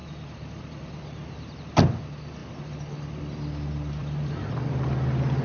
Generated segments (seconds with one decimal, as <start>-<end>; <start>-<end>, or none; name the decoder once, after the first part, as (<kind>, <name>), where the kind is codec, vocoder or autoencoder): 0.0-1.3 (vocoder, BigVGAN v2); 4.0-4.9